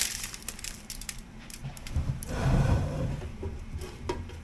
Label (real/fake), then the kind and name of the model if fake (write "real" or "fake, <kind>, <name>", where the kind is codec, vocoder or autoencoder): fake, vocoder, BigVGAN v2